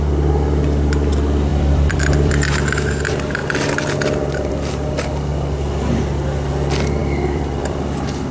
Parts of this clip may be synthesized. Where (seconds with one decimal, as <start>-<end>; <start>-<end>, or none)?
1.5-2.3; 7.0-7.8